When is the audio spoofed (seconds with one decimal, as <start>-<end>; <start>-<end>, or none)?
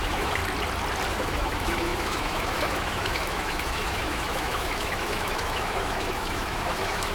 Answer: 0.0-0.4; 1.1-7.1